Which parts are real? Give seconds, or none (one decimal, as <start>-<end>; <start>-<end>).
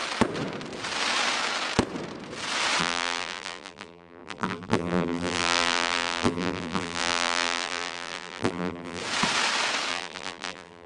0.0-2.8; 9.0-9.9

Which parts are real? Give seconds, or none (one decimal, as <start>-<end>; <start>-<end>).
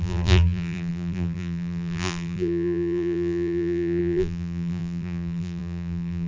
none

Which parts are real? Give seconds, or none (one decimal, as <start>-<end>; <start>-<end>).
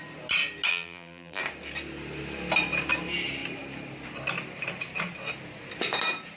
0.0-0.7; 1.4-6.4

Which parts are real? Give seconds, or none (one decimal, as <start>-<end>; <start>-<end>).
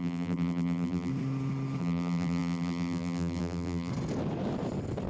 1.1-1.8; 3.9-5.1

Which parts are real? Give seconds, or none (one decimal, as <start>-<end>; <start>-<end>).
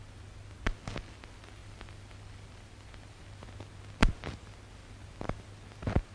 0.0-1.6; 3.4-6.1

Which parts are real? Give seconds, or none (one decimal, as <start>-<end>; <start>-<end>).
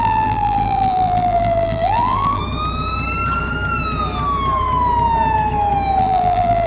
2.4-6.0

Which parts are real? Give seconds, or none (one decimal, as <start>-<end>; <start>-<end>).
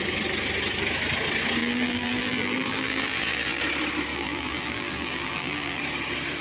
0.0-1.6; 3.6-4.1; 5.8-6.4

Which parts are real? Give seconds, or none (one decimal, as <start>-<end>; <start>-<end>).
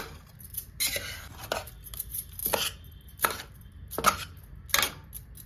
2.4-5.5